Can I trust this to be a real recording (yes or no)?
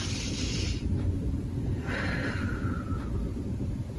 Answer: yes